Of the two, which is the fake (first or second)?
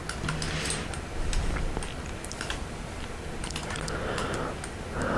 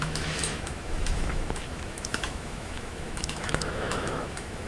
second